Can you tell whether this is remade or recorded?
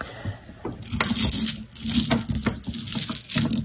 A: recorded